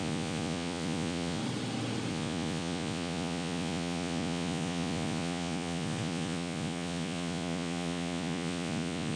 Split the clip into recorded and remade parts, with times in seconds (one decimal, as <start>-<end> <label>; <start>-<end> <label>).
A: 0.0-1.4 remade; 1.4-2.1 recorded; 2.1-9.2 remade